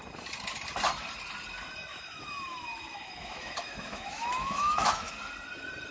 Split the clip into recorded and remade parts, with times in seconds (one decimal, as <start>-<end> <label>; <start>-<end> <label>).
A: 0.0-1.9 recorded; 1.9-5.1 remade; 5.1-5.9 recorded